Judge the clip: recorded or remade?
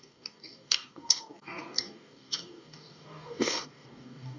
remade